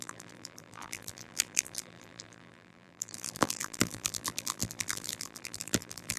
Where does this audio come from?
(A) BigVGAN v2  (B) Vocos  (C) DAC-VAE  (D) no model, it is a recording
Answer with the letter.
A